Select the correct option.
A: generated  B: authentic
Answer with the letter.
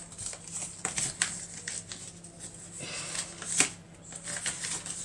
B